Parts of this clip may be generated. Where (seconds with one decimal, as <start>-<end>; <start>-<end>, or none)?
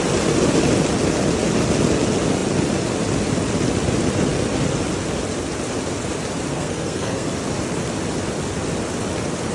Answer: 6.5-7.3